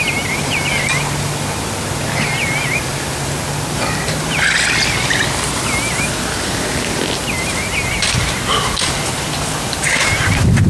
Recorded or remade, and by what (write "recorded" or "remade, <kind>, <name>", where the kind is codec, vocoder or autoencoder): recorded